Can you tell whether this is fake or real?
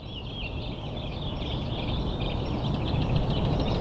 real